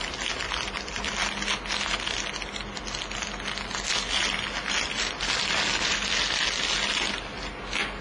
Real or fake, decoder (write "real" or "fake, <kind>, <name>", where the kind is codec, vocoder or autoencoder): real